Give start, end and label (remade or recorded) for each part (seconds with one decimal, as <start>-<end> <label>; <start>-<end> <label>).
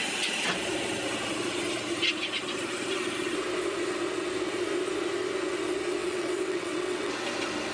0.0-6.0 recorded; 6.0-7.1 remade; 7.1-7.7 recorded